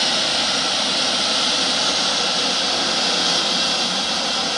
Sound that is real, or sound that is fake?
real